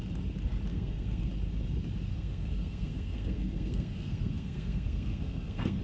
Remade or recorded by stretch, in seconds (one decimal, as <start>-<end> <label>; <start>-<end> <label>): 0.0-0.7 recorded; 0.7-1.3 remade; 1.3-2.1 recorded; 2.1-5.8 remade